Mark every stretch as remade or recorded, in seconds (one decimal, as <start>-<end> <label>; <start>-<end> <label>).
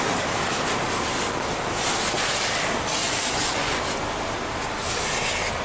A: 0.0-3.0 recorded; 3.0-3.8 remade; 3.8-5.6 recorded